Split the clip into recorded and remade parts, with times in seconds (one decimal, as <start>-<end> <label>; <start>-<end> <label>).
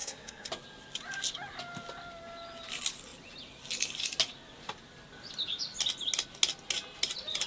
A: 0.0-0.5 remade; 0.5-7.5 recorded